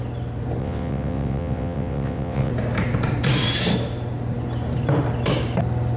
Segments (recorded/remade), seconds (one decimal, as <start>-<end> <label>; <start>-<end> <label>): 0.0-0.6 recorded; 0.6-2.5 remade; 2.5-6.0 recorded